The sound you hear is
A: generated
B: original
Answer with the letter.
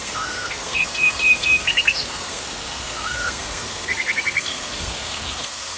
A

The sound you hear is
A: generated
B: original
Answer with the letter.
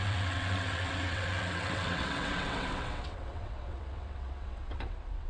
A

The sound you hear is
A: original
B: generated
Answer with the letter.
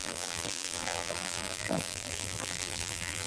B